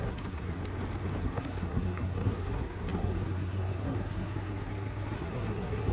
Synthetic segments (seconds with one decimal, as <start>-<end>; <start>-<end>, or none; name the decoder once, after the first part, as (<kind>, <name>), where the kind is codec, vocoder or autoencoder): 0.0-0.6 (codec, SNAC); 1.2-5.9